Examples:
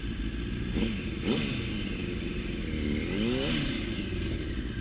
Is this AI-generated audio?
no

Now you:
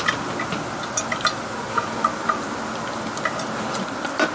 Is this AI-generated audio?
no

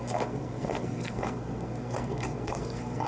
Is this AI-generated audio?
yes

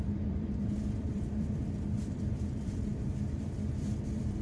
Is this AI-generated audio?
yes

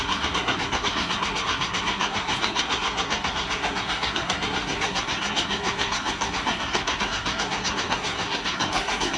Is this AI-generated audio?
yes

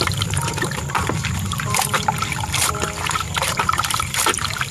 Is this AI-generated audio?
yes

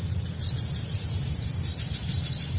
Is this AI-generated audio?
no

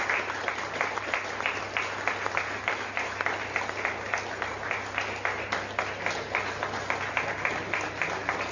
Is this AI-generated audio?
no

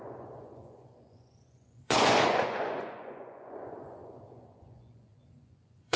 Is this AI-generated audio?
yes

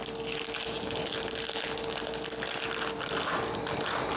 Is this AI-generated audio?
no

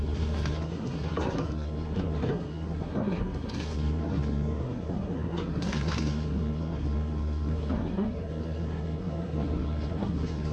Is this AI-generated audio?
yes